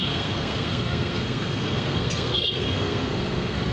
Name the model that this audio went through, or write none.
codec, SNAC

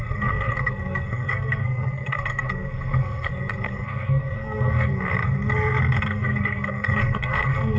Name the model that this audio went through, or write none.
codec, SNAC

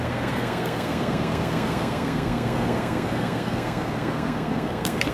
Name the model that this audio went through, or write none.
codec, SNAC